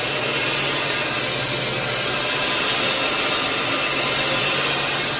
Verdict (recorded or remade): recorded